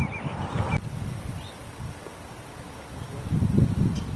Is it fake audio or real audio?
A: real